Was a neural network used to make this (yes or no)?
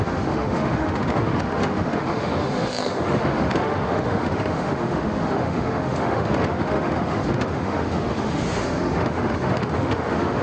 yes